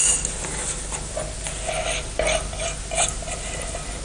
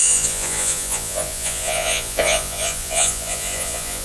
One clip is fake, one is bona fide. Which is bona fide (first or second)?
first